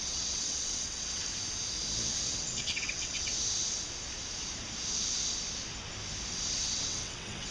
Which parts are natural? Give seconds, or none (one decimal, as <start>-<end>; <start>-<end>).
1.3-2.3; 3.3-6.3